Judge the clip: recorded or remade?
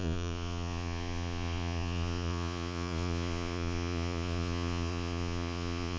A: remade